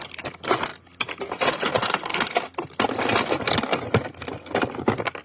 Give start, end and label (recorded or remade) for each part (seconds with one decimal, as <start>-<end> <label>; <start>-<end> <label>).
0.0-5.2 recorded